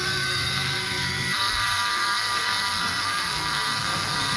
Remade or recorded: remade